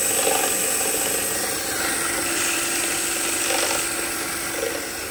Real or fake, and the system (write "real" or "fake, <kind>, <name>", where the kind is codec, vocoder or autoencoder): real